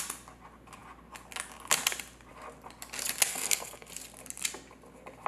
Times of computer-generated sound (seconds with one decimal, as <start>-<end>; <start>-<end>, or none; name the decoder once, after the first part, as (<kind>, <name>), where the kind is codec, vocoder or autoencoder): 3.3-3.9 (codec, SNAC)